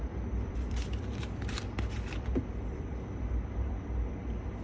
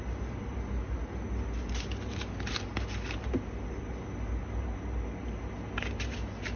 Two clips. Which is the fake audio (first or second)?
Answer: first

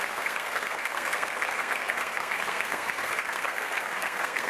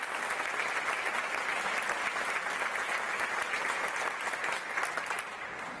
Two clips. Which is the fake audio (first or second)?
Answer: first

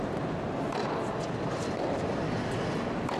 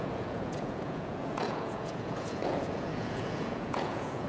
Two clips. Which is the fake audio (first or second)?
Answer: second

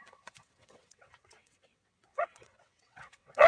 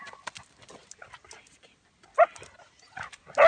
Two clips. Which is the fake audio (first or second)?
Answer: first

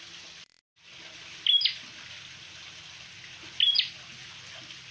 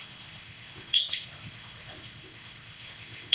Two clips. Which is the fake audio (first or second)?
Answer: second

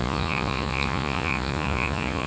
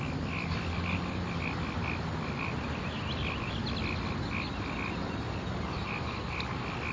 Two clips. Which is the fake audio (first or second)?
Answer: first